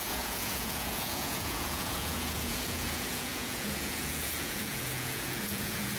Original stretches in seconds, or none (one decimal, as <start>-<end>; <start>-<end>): none